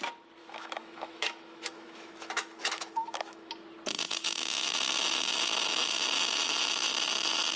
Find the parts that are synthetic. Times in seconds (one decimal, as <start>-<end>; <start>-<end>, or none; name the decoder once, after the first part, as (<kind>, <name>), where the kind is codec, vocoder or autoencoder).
0.4-3.5 (autoencoder, DAC-VAE)